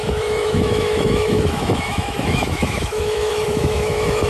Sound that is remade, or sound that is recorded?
remade